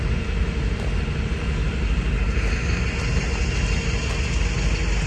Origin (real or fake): real